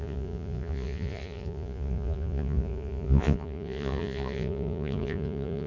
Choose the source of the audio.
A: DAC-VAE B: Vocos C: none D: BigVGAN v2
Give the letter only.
B